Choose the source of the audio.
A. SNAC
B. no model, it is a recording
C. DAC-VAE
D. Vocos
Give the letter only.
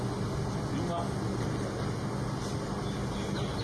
B